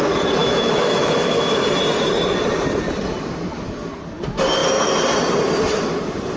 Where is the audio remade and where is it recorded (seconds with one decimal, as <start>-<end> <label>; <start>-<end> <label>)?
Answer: 0.0-0.4 recorded; 0.4-1.6 remade; 1.6-6.4 recorded